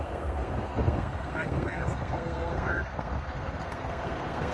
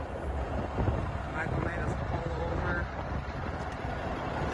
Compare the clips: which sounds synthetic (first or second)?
first